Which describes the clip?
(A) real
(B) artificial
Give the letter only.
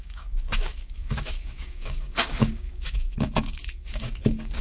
B